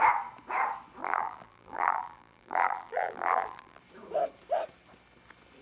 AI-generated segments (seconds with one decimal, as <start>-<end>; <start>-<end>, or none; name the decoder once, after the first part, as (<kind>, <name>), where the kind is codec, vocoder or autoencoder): 1.0-3.8 (vocoder, BigVGAN v2)

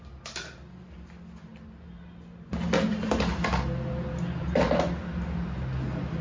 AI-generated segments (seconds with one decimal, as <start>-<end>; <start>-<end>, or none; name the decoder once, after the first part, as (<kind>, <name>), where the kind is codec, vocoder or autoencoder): none

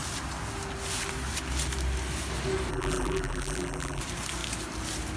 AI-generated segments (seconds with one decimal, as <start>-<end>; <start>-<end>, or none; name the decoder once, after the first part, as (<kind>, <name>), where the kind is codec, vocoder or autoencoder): 2.7-4.0 (vocoder, BigVGAN v2)

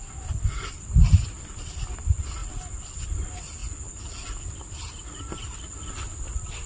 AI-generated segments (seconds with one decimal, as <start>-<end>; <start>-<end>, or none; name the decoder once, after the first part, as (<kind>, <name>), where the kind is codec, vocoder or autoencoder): none

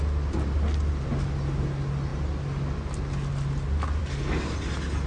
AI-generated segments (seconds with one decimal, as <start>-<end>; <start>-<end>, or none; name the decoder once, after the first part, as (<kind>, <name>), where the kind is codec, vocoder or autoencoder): none

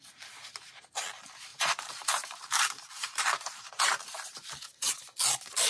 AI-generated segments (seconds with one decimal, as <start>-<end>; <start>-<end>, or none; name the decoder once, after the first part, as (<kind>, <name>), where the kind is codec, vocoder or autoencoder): 1.5-4.9 (vocoder, BigVGAN v2)

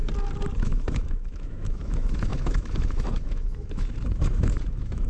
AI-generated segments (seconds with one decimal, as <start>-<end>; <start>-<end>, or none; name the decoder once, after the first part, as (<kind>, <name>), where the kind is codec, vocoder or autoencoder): 0.6-5.1 (autoencoder, DAC-VAE)